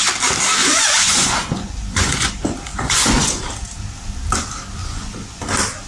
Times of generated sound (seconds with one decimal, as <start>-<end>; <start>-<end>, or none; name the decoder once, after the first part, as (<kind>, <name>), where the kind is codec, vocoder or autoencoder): 0.6-2.3 (vocoder, Vocos); 2.7-3.4; 4.8-5.4